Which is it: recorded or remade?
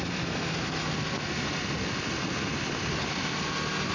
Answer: recorded